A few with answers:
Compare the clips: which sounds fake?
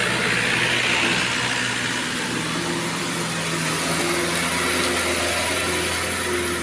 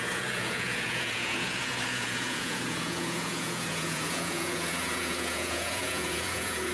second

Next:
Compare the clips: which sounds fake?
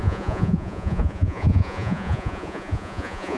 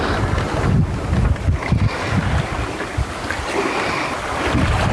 first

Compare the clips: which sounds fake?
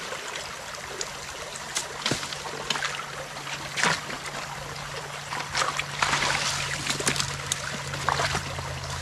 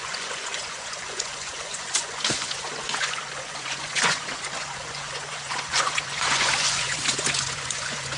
second